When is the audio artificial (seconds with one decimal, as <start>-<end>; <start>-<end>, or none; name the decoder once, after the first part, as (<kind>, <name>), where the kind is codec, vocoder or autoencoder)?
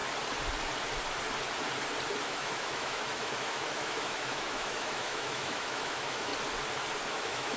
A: 2.2-6.3 (autoencoder, DAC-VAE); 7.1-7.6